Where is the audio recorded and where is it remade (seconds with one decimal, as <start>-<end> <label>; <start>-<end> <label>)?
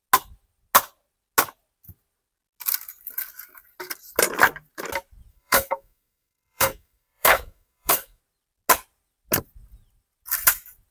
0.0-5.3 recorded; 5.3-8.2 remade; 8.2-10.9 recorded